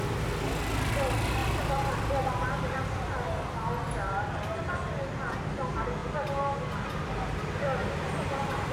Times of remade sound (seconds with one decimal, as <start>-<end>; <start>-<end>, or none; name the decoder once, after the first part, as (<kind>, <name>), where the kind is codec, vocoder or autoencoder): none